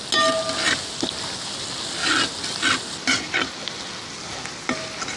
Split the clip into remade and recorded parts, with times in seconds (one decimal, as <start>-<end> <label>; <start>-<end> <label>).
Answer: 0.0-5.2 recorded